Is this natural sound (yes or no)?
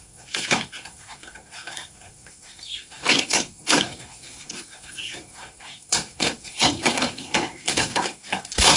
no